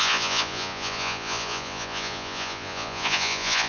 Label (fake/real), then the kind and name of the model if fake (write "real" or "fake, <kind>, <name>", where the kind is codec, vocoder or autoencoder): fake, vocoder, Vocos